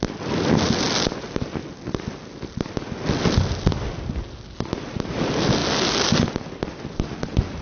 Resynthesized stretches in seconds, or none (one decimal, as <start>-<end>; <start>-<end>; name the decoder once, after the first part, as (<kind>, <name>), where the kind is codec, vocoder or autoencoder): none